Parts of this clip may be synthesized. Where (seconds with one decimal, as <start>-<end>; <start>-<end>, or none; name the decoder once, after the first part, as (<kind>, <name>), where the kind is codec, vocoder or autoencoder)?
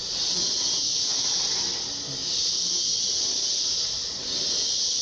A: none